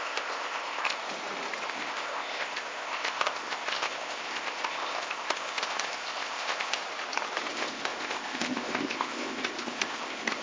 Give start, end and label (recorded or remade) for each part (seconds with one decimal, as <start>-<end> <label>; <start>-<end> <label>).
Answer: 0.0-1.0 remade; 1.0-1.7 recorded; 1.7-6.8 remade; 6.8-7.5 recorded; 7.5-10.4 remade